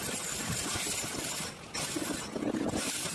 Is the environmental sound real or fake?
real